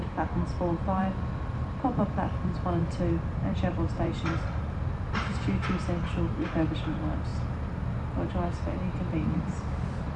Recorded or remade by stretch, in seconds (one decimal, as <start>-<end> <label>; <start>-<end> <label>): 0.0-7.3 remade; 7.3-9.7 recorded; 9.7-10.2 remade